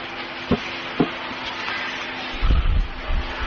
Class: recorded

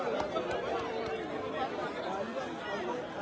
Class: recorded